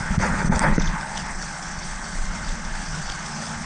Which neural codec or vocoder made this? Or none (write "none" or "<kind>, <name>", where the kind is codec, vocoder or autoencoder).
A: codec, HILCodec